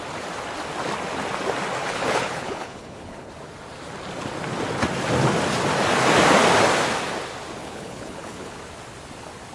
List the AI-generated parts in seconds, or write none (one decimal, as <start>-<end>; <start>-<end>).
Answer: 1.8-3.3; 7.6-8.6